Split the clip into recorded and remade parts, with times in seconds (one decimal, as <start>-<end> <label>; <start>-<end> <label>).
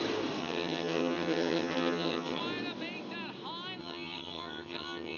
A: 0.0-0.4 recorded; 0.4-2.4 remade; 2.4-3.8 recorded; 3.8-5.2 remade